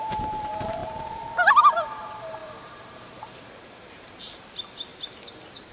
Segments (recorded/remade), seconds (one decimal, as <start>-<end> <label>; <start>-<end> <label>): 0.0-4.9 remade; 4.9-5.7 recorded